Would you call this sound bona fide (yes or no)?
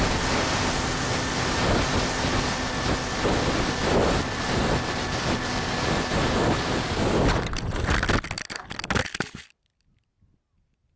yes